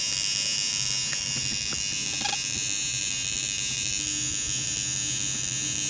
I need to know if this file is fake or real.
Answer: real